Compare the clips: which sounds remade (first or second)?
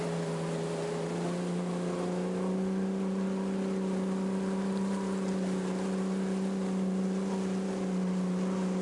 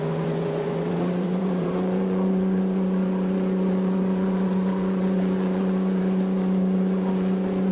second